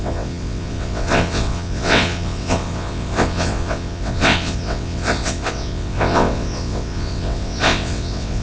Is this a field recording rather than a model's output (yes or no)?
no